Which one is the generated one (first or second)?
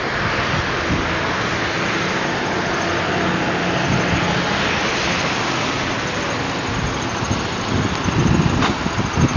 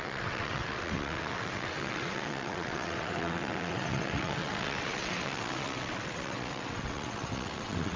second